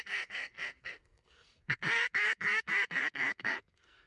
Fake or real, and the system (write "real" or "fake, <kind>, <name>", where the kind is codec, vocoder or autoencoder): fake, codec, SNAC